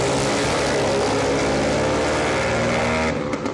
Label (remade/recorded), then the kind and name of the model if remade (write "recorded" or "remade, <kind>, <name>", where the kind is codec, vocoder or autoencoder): recorded